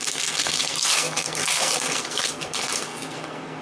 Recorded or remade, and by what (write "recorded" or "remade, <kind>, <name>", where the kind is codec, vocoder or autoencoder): remade, codec, SNAC